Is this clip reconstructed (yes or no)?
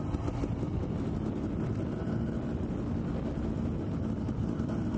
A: no